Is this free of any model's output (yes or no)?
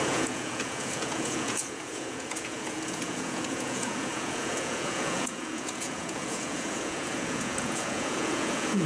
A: no